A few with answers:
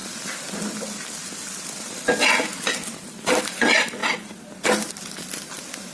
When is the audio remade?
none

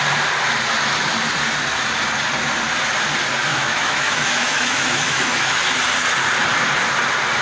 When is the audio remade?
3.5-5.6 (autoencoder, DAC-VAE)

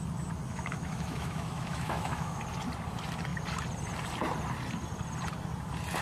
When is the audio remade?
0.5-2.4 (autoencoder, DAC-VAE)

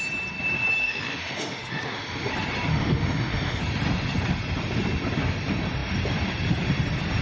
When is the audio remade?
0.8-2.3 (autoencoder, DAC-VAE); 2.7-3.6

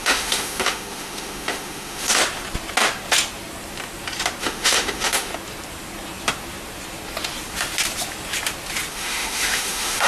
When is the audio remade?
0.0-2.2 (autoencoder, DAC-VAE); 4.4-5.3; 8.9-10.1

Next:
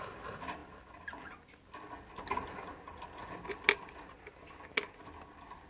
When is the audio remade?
none

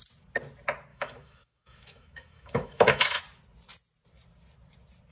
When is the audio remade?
0.9-3.2 (autoencoder, DAC-VAE)